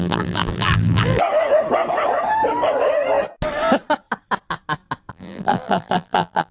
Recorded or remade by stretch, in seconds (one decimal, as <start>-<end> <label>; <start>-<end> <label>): 0.0-1.2 remade; 1.2-5.1 recorded; 5.1-6.5 remade